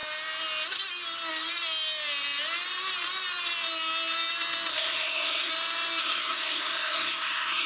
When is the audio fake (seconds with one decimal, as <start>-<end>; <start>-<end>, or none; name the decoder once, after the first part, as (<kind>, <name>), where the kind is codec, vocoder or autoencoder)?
4.7-5.5 (codec, SNAC); 6.0-7.7